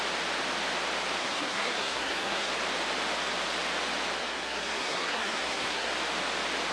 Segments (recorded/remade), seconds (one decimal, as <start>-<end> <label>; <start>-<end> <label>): 0.0-1.2 recorded; 1.2-2.5 remade; 2.5-4.2 recorded; 4.2-5.9 remade; 5.9-6.7 recorded